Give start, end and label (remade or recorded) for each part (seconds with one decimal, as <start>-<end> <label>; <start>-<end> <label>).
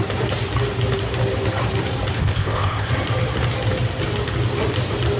0.0-2.2 recorded; 2.2-2.9 remade; 2.9-5.2 recorded